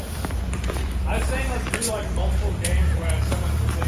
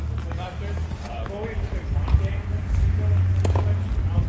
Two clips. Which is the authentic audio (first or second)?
second